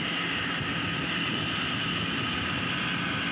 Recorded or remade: recorded